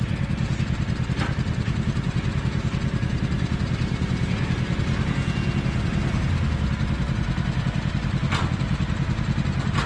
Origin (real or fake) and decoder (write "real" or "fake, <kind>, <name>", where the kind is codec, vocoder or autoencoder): real